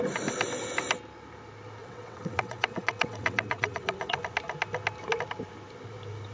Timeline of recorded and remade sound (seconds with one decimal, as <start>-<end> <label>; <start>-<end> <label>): 0.0-1.8 recorded; 1.8-4.2 remade; 4.2-6.3 recorded